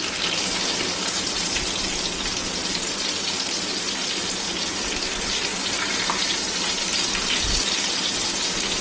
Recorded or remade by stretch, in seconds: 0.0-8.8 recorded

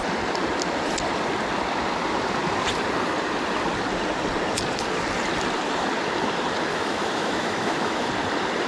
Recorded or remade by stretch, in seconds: 0.0-6.7 recorded; 6.7-8.1 remade; 8.1-8.7 recorded

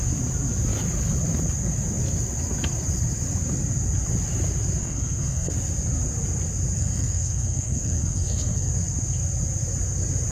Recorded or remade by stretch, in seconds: 0.0-4.8 recorded; 4.8-5.5 remade; 5.5-6.8 recorded; 6.8-8.7 remade; 8.7-10.3 recorded